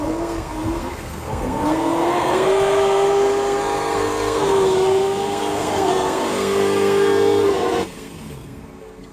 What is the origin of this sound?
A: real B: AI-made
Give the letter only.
B